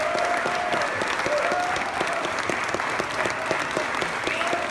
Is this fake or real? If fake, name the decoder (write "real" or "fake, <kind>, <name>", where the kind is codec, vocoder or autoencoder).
real